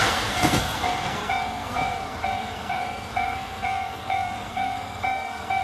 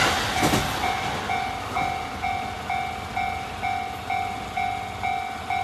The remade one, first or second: first